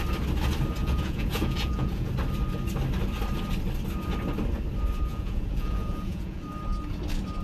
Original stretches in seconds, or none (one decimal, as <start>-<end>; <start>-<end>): 0.0-0.8; 2.1-5.1; 6.4-7.4